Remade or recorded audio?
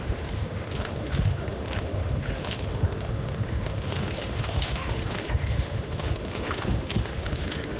remade